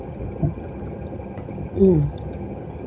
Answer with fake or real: fake